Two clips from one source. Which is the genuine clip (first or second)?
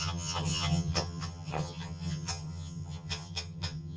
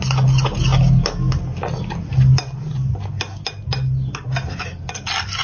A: second